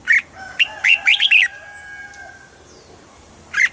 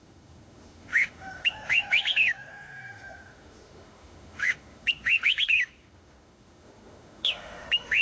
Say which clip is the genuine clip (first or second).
first